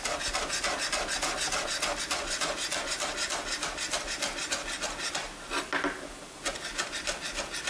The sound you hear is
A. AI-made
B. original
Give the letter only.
B